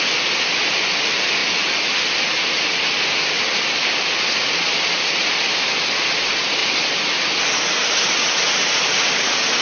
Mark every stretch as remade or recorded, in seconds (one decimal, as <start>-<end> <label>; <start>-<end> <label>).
0.0-9.6 recorded